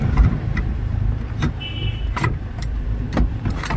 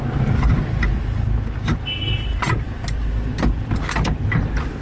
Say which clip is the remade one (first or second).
first